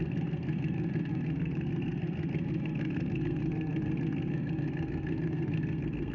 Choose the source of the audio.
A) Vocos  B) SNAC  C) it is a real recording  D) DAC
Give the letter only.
B